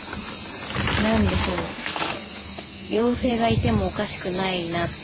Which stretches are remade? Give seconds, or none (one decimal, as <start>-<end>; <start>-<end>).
1.5-3.3